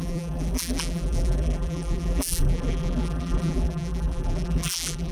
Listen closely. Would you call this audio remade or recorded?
remade